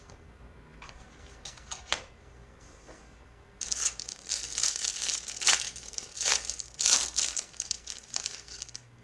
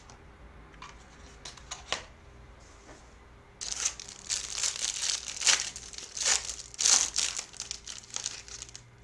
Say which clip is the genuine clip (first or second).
second